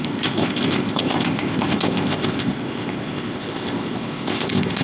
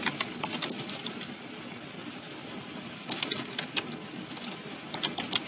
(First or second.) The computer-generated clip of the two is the first